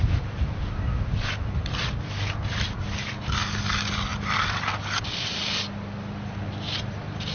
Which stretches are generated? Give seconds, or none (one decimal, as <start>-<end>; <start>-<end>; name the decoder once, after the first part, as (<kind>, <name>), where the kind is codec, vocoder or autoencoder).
none